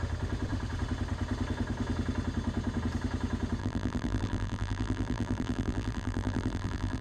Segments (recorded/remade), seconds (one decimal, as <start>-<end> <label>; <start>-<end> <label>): 0.0-3.6 recorded; 3.6-7.0 remade